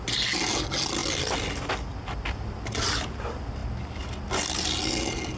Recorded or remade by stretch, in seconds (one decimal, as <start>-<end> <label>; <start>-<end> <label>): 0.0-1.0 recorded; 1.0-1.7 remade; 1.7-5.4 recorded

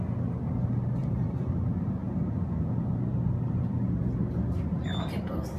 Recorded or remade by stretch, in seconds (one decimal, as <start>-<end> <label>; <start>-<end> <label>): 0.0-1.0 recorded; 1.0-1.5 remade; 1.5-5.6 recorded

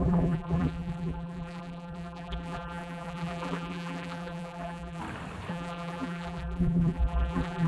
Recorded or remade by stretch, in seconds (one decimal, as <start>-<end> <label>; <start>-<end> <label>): 0.0-5.0 remade; 5.0-5.5 recorded; 5.5-7.7 remade

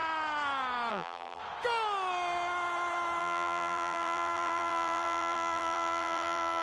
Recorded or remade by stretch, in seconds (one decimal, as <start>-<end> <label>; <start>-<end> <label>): 0.0-0.9 recorded; 0.9-1.4 remade; 1.4-3.2 recorded; 3.2-6.6 remade

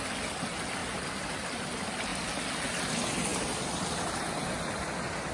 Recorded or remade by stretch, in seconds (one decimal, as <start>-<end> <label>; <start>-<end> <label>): 0.0-0.8 recorded; 0.8-1.6 remade; 1.6-3.3 recorded; 3.3-4.2 remade; 4.2-5.3 recorded

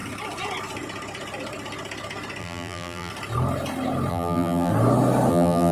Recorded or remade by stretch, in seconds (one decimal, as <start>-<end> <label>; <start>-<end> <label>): 0.0-2.4 recorded; 2.4-3.1 remade; 3.1-4.1 recorded; 4.1-4.7 remade; 4.7-5.3 recorded; 5.3-5.7 remade

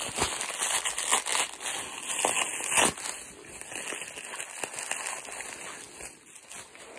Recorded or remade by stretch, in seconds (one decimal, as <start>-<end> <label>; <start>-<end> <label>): 0.0-7.0 recorded

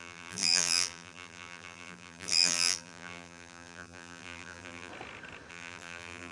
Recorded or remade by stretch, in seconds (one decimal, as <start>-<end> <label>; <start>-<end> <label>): 0.0-4.9 remade; 4.9-5.5 recorded; 5.5-6.3 remade